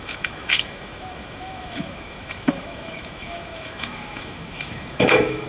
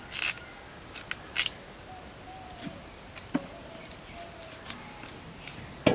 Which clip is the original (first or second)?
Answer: second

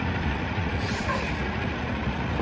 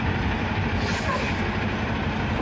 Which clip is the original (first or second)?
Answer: second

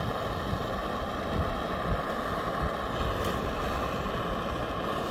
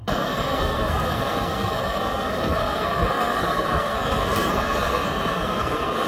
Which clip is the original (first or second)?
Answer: first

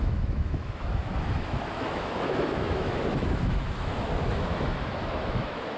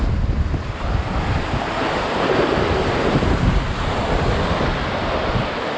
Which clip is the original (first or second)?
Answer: second